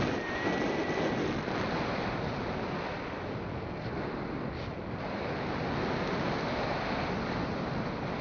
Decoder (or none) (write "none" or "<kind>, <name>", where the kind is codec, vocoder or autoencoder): none